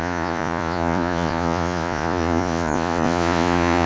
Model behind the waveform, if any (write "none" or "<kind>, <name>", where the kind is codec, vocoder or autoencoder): vocoder, Vocos